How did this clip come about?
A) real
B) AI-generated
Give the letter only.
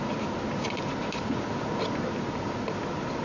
A